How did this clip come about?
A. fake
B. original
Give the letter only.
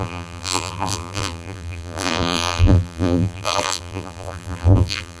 A